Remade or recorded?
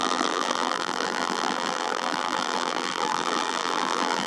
remade